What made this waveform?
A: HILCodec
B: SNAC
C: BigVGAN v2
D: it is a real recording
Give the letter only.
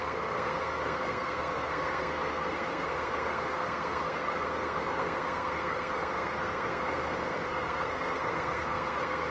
B